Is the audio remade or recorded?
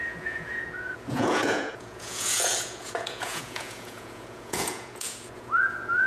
remade